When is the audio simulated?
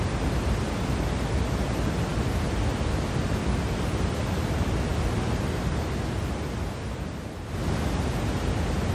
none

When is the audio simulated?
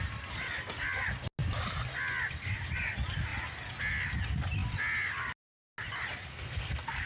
6.3-7.1 (codec, SNAC)